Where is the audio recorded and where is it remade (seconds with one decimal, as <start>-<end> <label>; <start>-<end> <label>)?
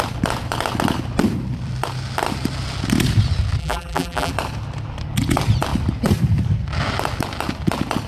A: 0.0-3.6 recorded; 3.6-4.3 remade; 4.3-8.1 recorded